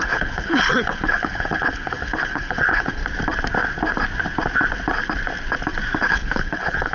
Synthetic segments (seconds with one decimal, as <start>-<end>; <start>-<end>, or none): 0.0-3.0; 6.0-6.9